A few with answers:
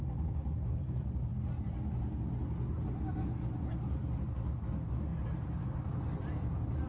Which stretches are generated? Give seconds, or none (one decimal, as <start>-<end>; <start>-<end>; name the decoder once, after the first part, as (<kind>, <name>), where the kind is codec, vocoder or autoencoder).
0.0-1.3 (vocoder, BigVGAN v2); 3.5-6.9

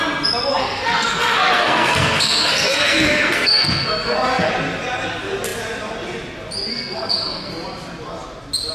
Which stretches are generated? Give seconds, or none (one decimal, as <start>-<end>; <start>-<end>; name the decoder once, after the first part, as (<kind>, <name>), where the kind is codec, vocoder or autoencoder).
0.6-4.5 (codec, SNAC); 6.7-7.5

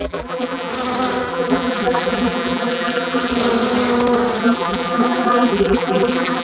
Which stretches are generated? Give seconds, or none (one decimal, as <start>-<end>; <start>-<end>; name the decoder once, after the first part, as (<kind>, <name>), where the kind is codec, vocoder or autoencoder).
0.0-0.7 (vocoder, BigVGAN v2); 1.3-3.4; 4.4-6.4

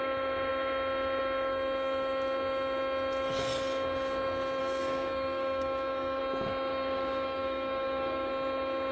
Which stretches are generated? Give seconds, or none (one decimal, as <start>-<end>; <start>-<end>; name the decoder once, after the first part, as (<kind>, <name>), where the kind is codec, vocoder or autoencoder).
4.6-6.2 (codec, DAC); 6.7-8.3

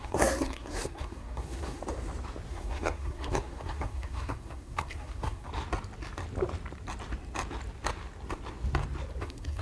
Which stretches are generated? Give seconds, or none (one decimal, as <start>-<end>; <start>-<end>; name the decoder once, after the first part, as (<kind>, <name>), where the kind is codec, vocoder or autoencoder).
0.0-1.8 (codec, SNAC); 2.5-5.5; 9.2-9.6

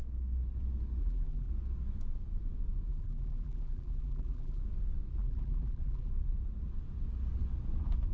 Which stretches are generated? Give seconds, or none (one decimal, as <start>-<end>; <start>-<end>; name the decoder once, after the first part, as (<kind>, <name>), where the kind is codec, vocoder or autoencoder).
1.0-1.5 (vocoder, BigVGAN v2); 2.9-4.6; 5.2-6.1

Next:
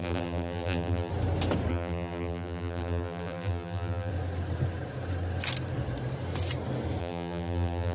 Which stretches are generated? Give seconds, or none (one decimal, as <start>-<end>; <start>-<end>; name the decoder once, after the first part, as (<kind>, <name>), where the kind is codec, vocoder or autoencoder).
0.0-1.1 (vocoder, BigVGAN v2); 1.7-4.1; 7.0-7.9